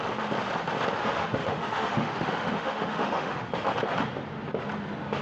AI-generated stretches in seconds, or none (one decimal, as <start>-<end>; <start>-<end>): 1.0-3.5